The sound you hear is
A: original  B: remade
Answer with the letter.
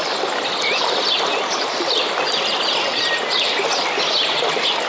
A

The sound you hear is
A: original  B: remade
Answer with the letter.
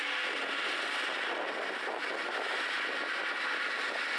A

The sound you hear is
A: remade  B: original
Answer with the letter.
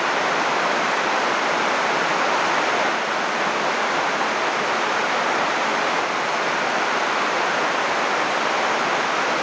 B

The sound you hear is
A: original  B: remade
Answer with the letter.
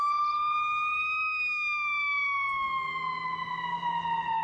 A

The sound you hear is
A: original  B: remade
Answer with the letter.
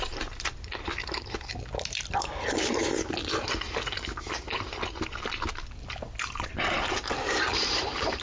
B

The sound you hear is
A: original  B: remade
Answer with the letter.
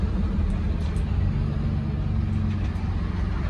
A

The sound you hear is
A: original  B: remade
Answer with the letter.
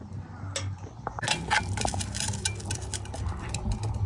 A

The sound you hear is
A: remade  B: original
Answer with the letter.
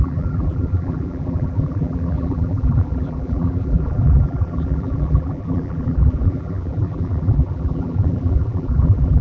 A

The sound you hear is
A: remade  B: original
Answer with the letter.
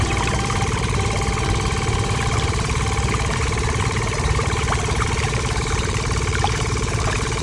A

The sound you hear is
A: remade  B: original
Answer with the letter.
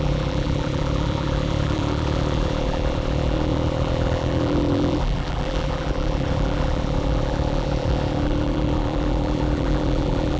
A